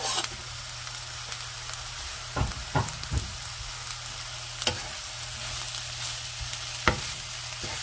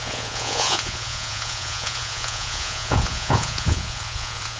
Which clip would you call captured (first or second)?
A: first